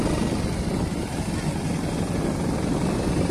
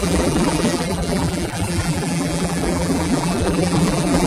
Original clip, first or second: first